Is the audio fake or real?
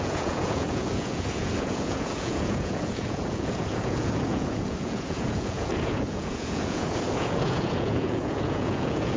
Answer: fake